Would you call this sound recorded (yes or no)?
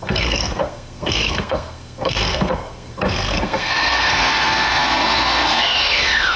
no